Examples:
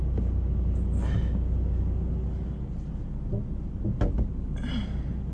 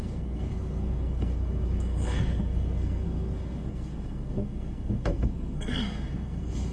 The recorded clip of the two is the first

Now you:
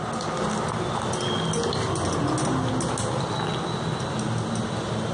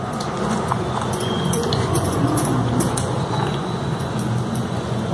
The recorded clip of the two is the first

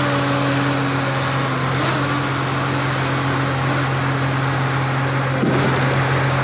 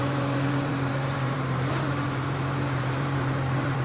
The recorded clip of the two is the first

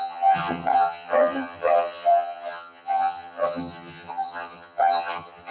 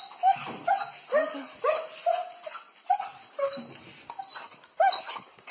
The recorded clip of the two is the second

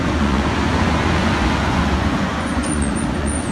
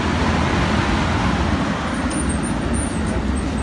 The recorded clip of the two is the second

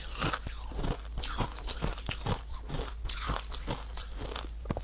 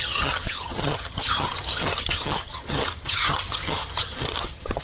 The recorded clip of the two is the first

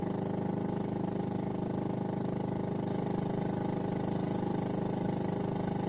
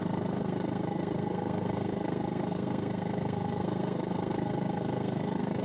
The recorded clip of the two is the first